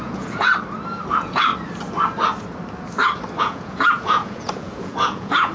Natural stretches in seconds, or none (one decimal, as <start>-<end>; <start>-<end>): 0.5-1.1; 1.5-3.4